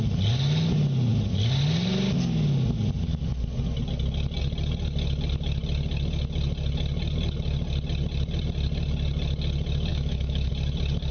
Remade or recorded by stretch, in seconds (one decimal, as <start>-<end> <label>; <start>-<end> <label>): 0.0-9.9 recorded; 9.9-10.5 remade; 10.5-11.1 recorded